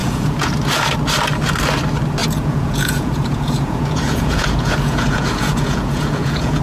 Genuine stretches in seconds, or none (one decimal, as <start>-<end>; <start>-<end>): 0.5-2.2